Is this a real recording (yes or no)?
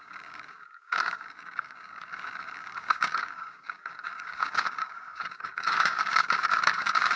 no